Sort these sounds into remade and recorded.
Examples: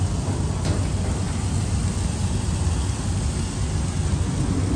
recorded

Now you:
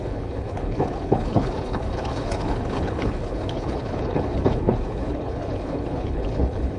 remade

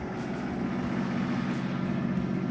recorded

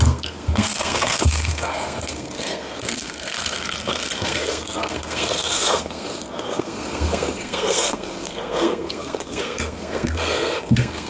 remade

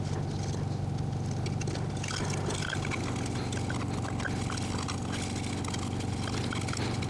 recorded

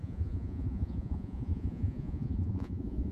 remade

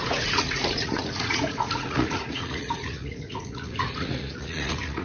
remade